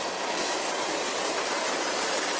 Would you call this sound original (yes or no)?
yes